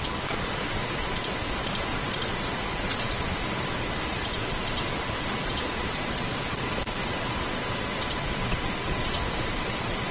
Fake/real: fake